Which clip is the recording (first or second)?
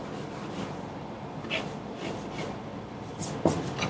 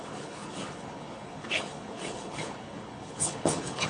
first